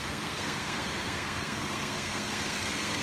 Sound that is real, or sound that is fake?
fake